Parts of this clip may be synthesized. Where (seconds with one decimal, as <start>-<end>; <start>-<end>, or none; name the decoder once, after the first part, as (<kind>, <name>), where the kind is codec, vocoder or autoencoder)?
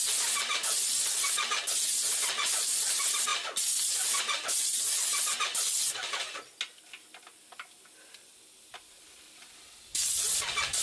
none